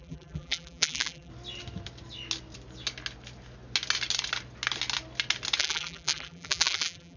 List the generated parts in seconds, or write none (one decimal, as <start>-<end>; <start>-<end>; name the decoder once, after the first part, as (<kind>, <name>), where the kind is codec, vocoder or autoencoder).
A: 0.0-1.3 (vocoder, BigVGAN v2); 5.6-7.2